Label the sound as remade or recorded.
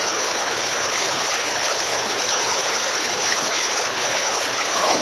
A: remade